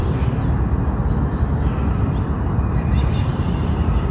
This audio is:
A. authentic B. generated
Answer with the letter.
A